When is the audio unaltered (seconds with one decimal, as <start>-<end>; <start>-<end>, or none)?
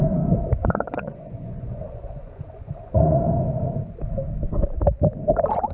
0.0-0.6; 3.2-5.7